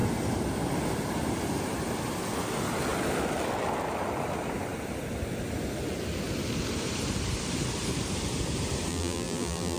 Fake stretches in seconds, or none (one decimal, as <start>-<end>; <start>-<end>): 8.9-9.8